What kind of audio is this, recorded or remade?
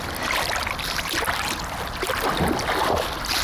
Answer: recorded